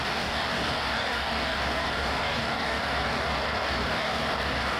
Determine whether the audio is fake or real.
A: fake